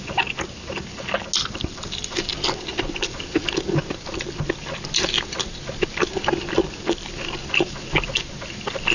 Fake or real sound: real